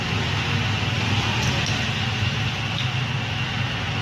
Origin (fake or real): real